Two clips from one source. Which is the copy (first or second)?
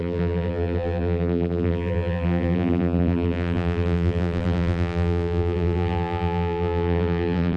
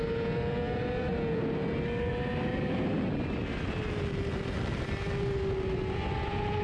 first